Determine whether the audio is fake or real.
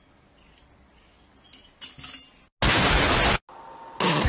real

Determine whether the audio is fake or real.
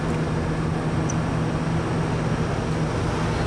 real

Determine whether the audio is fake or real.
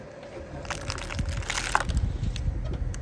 real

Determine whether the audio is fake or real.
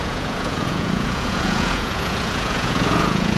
fake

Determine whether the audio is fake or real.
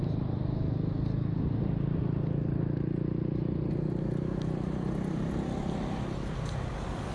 real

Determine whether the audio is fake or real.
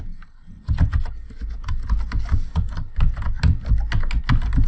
real